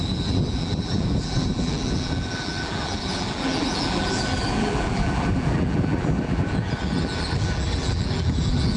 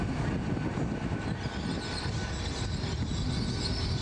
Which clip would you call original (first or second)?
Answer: second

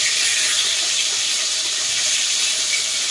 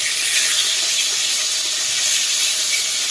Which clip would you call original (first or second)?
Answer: second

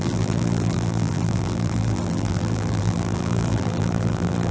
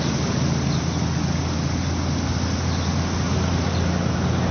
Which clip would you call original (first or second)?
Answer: second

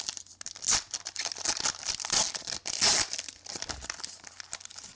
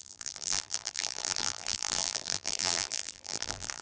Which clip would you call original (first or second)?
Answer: first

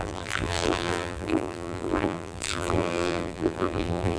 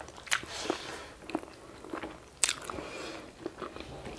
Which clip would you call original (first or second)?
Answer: second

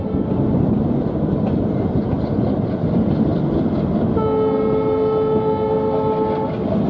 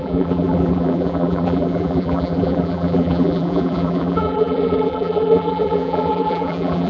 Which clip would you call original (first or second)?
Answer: first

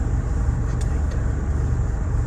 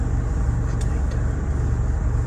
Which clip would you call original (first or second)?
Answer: second